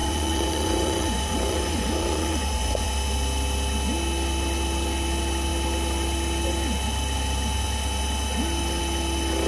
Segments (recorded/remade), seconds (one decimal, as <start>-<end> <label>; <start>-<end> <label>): 0.0-2.9 remade; 2.9-9.5 recorded